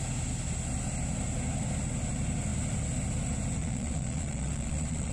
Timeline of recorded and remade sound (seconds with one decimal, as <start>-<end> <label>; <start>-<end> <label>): 0.0-3.6 recorded; 3.6-5.1 remade

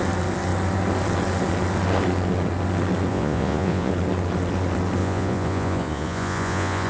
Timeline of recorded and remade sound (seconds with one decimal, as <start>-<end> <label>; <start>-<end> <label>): 0.0-3.1 recorded; 3.1-3.9 remade; 3.9-5.0 recorded; 5.0-6.9 remade

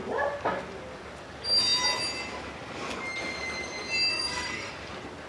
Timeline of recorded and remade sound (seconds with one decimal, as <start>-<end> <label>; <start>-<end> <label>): 0.0-4.1 recorded; 4.1-4.7 remade; 4.7-5.3 recorded

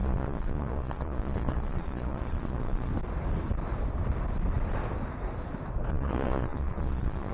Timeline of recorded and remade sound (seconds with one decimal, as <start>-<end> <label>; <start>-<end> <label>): 0.0-2.9 remade; 2.9-5.9 recorded; 5.9-7.3 remade